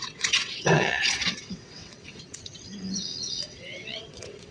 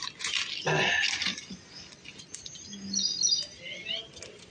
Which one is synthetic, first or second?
first